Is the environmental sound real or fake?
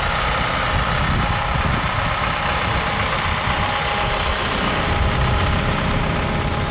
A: real